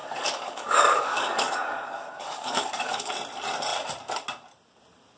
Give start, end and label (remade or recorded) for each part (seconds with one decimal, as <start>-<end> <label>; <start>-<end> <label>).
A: 0.0-3.1 remade; 3.1-5.2 recorded